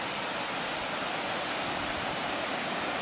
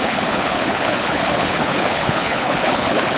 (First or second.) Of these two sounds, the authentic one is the first